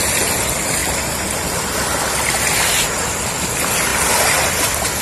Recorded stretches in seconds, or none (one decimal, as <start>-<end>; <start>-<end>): 0.0-5.0